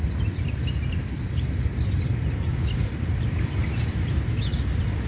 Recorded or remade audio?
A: recorded